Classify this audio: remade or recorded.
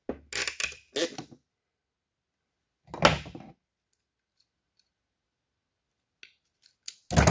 recorded